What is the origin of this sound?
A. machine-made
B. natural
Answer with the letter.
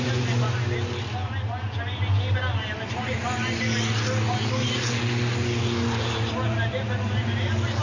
B